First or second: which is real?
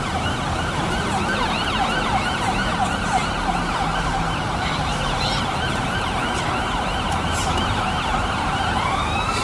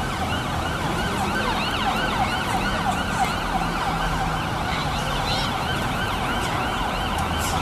second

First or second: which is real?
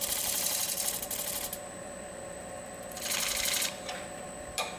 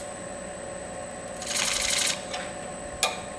second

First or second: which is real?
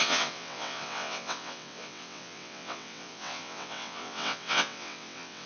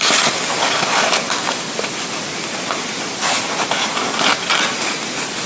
second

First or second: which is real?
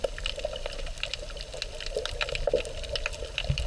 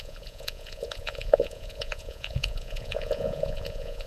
first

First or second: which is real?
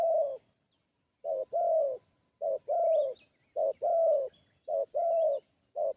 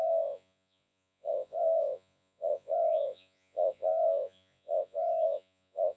first